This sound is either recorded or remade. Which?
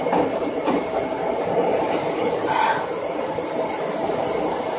recorded